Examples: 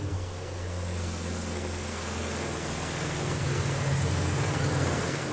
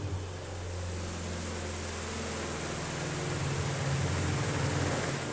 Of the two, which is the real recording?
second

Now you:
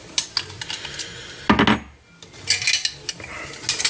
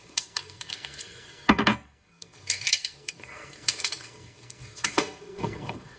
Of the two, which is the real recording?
first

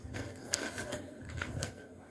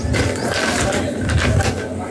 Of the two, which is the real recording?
second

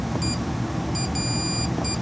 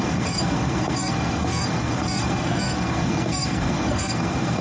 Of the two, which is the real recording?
first